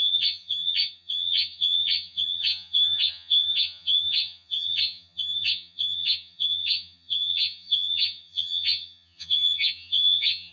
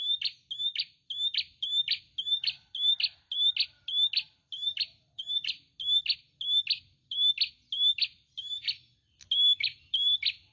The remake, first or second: first